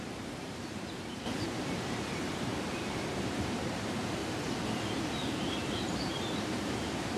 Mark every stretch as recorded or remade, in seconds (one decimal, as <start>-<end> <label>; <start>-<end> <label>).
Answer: 0.0-4.2 remade; 4.2-5.1 recorded; 5.1-7.2 remade